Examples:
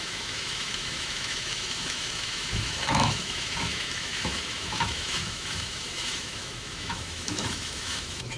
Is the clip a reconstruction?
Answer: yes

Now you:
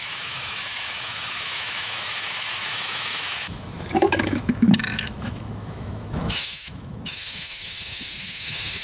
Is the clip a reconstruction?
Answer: yes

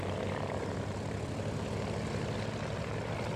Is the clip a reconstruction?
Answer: no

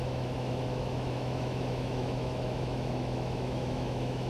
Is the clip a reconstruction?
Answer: yes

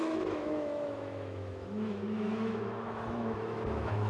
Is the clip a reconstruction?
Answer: yes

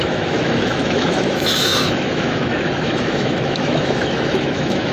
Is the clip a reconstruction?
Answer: yes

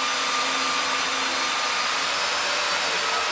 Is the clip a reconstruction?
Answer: no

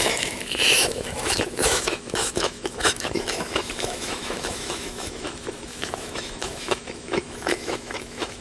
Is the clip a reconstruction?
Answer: yes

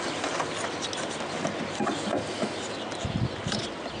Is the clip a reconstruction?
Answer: no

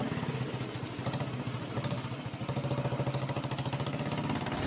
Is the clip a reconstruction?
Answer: no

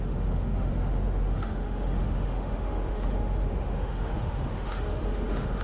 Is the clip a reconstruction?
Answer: yes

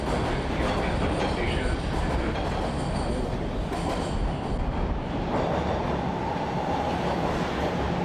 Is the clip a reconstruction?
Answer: no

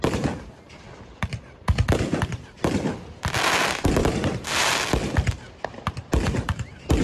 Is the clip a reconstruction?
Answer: no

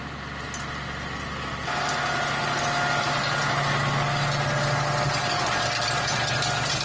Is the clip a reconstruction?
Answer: no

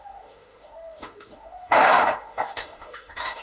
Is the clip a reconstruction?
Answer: yes